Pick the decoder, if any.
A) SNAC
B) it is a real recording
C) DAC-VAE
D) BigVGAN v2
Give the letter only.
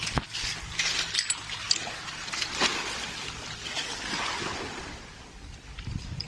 B